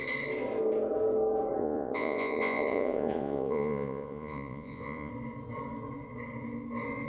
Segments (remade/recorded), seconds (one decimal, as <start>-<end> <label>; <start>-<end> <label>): 0.0-1.6 recorded; 1.6-5.1 remade; 5.1-7.1 recorded